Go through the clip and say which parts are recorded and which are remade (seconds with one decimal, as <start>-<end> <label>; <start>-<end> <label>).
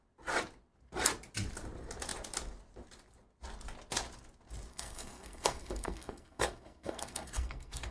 0.0-4.7 recorded; 4.7-7.9 remade